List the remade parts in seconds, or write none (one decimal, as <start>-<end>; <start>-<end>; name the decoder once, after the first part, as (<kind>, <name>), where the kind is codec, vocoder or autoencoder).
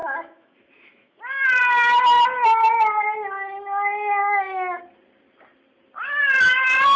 0.0-1.2 (autoencoder, DAC-VAE); 4.2-4.8